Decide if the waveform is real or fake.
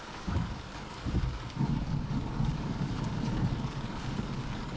fake